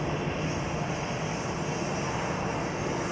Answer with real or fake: real